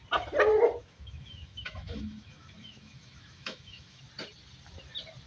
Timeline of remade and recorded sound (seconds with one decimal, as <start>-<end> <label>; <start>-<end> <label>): 0.0-0.8 recorded; 0.8-4.0 remade; 4.0-5.3 recorded